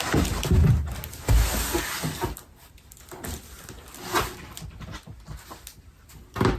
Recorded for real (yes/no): yes